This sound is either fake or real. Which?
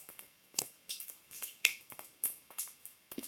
fake